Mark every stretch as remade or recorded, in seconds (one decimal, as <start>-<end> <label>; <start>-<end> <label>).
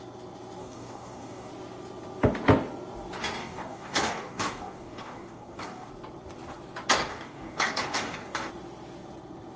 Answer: 0.0-0.6 recorded; 0.6-1.5 remade; 1.5-3.4 recorded; 3.4-5.9 remade; 5.9-7.1 recorded; 7.1-8.5 remade; 8.5-9.6 recorded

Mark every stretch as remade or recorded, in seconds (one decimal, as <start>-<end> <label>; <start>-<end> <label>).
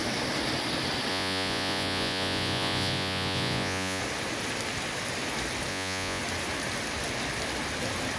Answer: 0.0-1.1 recorded; 1.1-4.0 remade; 4.0-5.7 recorded; 5.7-6.2 remade; 6.2-8.2 recorded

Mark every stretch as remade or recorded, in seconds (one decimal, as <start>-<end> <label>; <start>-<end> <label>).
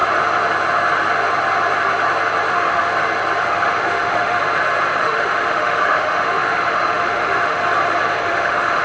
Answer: 0.0-2.5 recorded; 2.5-2.9 remade; 2.9-3.4 recorded; 3.4-4.4 remade; 4.4-5.0 recorded; 5.0-7.6 remade; 7.6-8.2 recorded; 8.2-8.8 remade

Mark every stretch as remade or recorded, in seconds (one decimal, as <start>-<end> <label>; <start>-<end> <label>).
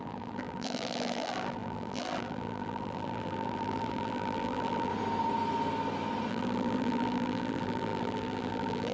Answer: 0.0-4.9 remade; 4.9-6.3 recorded; 6.3-8.9 remade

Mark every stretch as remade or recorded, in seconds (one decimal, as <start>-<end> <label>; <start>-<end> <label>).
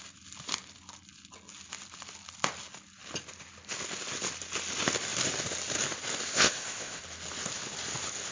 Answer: 0.0-6.3 recorded; 6.3-7.0 remade; 7.0-8.3 recorded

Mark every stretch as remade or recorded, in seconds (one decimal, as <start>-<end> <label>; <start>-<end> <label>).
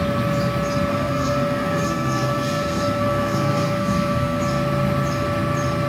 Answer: 0.0-0.9 recorded; 0.9-4.4 remade; 4.4-5.9 recorded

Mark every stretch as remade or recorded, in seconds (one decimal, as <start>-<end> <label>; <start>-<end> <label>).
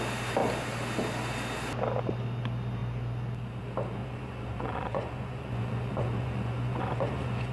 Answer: 0.0-4.0 recorded; 4.0-7.5 remade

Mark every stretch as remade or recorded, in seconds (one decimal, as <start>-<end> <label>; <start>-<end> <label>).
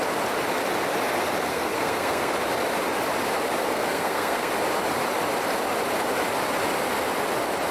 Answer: 0.0-1.5 recorded; 1.5-2.3 remade; 2.3-3.6 recorded; 3.6-4.5 remade; 4.5-7.7 recorded